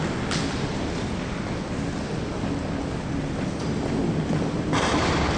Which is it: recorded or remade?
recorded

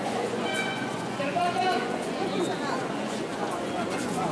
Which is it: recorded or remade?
remade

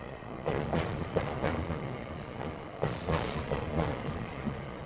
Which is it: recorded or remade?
remade